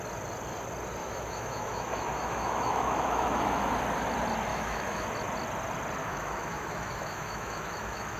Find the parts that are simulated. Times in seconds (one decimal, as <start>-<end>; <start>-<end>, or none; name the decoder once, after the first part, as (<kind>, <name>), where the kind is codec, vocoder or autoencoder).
1.0-3.7 (autoencoder, DAC-VAE); 4.5-5.1; 6.0-8.2